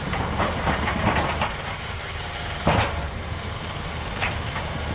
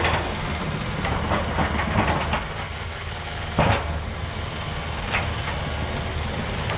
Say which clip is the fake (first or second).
first